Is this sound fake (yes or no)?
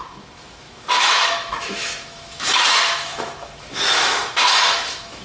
yes